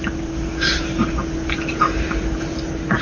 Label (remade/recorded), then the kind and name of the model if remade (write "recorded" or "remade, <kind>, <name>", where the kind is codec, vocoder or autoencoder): recorded